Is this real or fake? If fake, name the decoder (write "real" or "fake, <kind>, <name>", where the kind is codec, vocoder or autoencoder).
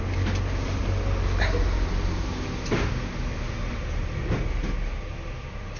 real